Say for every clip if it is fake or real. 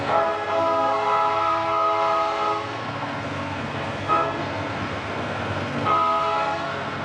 fake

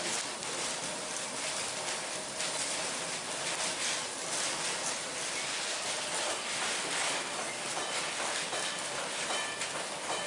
real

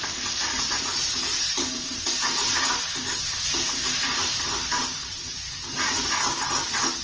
real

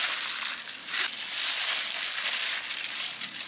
real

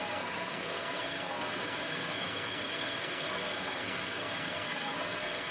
fake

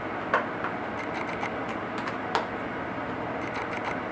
real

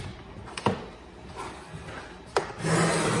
real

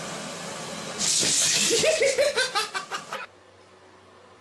real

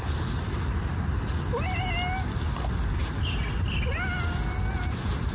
real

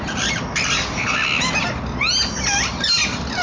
real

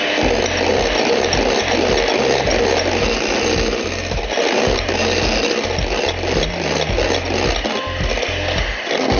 real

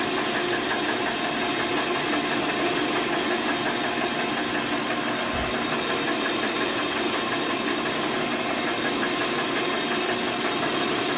real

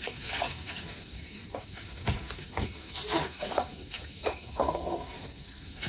fake